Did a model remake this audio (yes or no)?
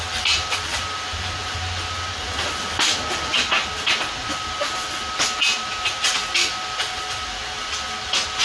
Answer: no